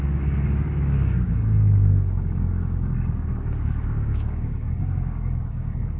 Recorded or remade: remade